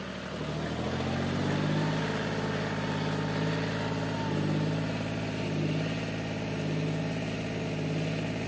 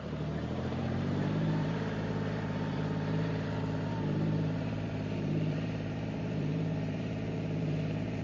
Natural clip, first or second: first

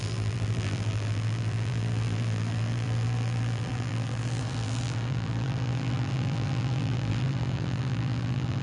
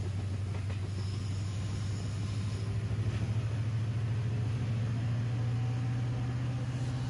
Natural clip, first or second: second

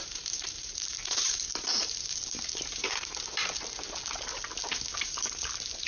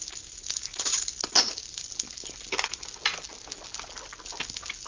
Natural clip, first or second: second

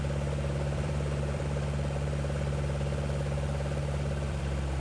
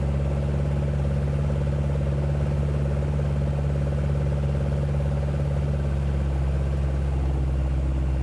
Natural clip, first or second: second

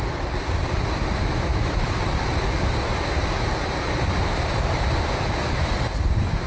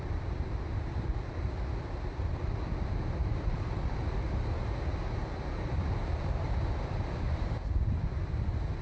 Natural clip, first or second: second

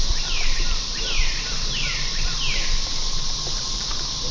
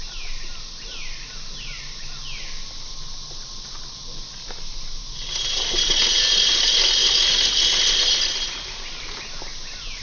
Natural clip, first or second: second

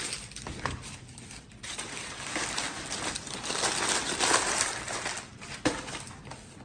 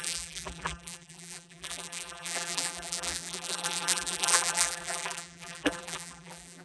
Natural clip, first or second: first